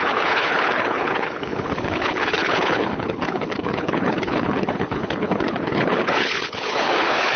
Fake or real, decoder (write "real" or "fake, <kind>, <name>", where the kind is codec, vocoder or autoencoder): fake, codec, HILCodec